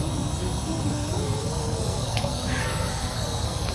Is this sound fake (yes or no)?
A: yes